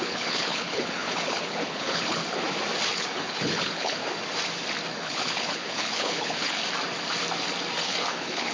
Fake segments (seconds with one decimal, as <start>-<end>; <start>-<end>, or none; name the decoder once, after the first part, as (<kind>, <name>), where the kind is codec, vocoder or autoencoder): 0.0-2.2 (codec, HILCodec); 2.9-4.0; 4.9-6.6; 7.8-8.5